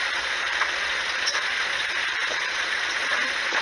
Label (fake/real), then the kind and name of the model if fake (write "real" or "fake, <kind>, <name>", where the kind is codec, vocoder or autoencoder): fake, vocoder, Vocos